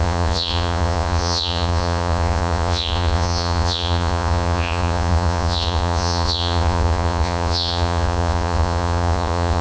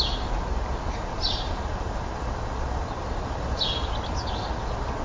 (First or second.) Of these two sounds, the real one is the second